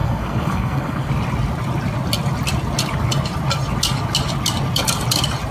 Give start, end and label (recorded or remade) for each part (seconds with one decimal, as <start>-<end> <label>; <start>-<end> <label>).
0.0-1.1 remade; 1.1-5.5 recorded